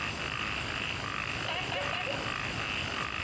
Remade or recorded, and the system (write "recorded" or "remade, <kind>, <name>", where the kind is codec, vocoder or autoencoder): recorded